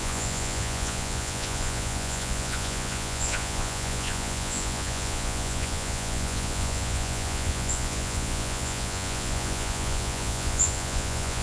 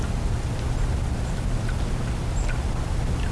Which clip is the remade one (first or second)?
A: first